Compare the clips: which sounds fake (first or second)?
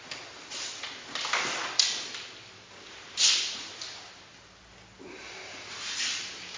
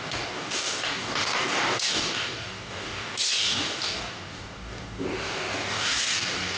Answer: second